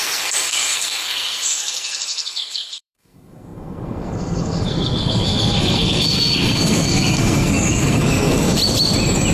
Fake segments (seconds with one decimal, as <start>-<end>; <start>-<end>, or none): 0.0-8.6